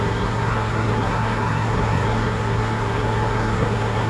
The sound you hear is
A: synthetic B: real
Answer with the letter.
A